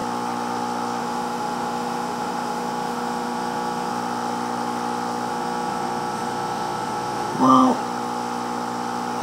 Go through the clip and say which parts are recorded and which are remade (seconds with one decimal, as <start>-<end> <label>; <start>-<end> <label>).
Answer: 0.0-1.0 recorded; 1.0-3.9 remade; 3.9-5.3 recorded; 5.3-7.8 remade; 7.8-9.2 recorded